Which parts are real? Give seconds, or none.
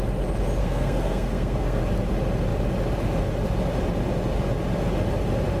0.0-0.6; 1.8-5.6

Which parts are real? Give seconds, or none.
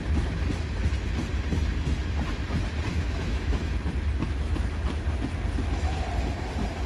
0.0-2.9; 3.7-6.9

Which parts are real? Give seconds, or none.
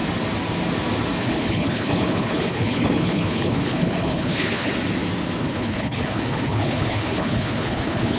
0.0-1.2; 4.7-5.4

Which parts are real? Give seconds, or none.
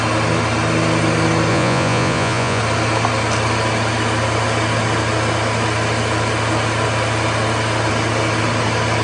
0.0-1.5; 2.6-9.0